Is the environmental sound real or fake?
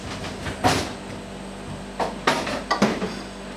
real